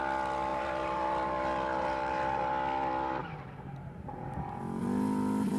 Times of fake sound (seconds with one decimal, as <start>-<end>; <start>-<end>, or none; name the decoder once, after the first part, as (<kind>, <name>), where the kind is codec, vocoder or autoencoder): 0.5-2.5 (vocoder, BigVGAN v2); 3.2-4.6